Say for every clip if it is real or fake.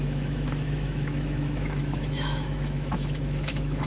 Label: fake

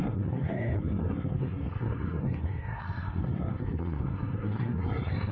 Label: fake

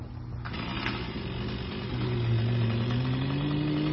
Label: real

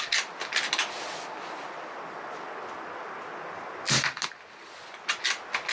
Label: real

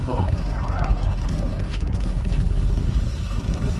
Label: fake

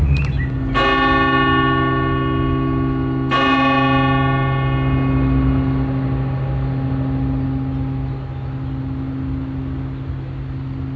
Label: real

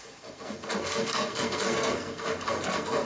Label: fake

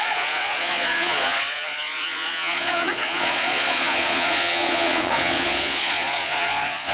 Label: fake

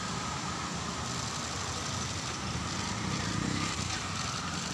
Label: real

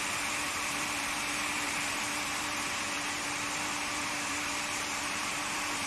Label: fake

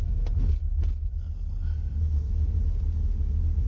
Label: real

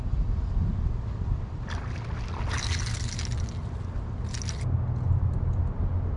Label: real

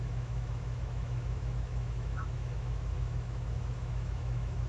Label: fake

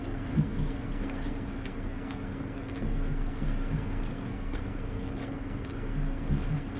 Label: fake